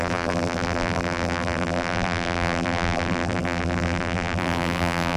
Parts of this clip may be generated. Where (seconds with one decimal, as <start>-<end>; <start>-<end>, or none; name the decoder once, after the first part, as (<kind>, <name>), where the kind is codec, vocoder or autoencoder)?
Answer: 0.0-5.2 (vocoder, BigVGAN v2)